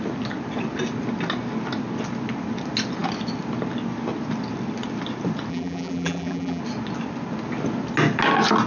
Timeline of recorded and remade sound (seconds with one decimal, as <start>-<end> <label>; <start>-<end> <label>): 0.0-5.5 recorded; 5.5-6.6 remade; 6.6-8.7 recorded